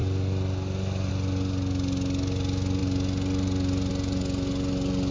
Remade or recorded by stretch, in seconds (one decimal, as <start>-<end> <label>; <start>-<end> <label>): 0.0-5.1 recorded